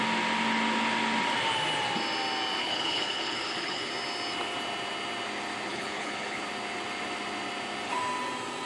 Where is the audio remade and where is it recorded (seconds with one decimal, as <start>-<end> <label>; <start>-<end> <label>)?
0.0-2.6 recorded; 2.6-3.9 remade; 3.9-5.7 recorded; 5.7-6.4 remade; 6.4-8.7 recorded